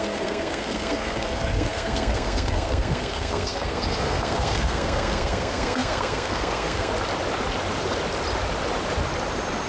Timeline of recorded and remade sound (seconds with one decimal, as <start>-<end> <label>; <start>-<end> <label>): 0.0-6.9 remade; 6.9-9.7 recorded